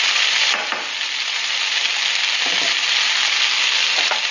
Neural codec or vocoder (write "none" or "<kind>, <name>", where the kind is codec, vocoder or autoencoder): none